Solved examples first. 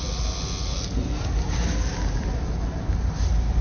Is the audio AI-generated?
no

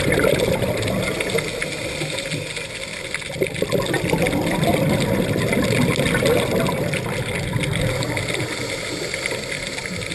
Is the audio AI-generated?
no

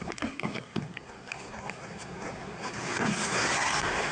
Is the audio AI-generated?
yes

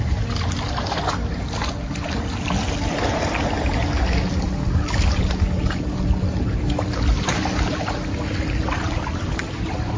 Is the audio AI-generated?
no